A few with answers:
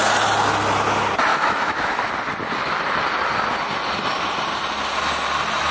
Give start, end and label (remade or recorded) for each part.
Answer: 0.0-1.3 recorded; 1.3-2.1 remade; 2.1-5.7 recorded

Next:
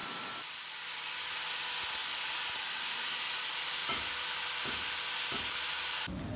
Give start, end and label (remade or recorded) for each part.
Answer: 0.0-1.4 remade; 1.4-3.8 recorded; 3.8-4.4 remade; 4.4-6.4 recorded

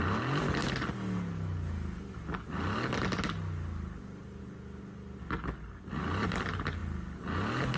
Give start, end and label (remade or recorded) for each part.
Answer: 0.0-7.8 recorded

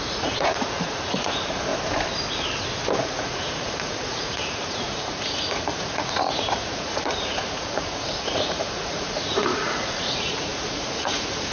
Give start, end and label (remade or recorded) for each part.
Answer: 0.0-1.7 remade; 1.7-3.0 recorded; 3.0-11.5 remade